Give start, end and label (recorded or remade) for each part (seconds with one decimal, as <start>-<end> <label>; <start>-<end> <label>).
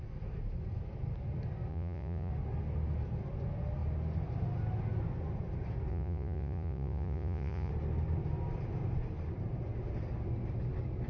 0.0-1.7 recorded; 1.7-2.3 remade; 2.3-5.9 recorded; 5.9-7.7 remade; 7.7-11.1 recorded